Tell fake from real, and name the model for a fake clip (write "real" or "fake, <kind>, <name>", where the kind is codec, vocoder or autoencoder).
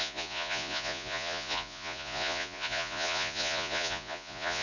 fake, vocoder, Vocos